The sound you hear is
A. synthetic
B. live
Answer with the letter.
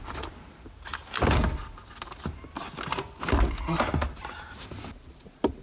B